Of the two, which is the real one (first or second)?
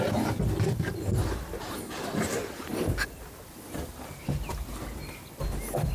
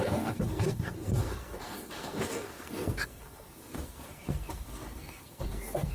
first